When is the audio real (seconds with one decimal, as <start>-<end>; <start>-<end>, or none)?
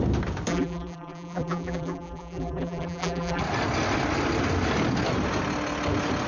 0.0-0.5; 3.4-6.3